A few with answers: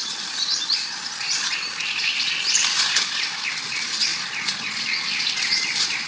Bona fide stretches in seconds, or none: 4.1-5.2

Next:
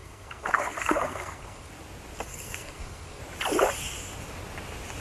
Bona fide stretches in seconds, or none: 1.7-2.3; 3.2-5.0

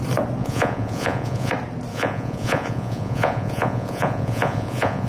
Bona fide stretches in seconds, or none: 0.0-0.4; 1.5-1.9

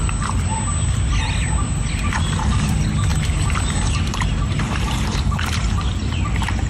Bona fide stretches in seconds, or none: 0.0-3.1; 6.2-6.7

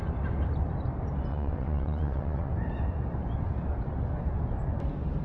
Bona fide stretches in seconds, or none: 0.0-1.3; 2.5-5.2

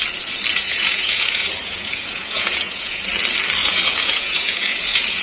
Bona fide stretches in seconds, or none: 0.0-0.5; 3.0-3.6

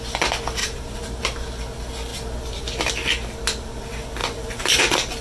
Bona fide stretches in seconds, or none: 0.0-0.6; 1.2-4.2; 4.8-5.2

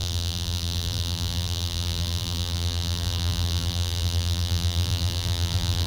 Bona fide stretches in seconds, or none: none